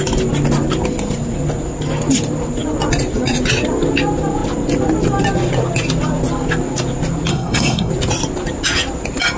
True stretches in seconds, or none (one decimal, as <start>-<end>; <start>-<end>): 0.0-7.3; 7.9-9.4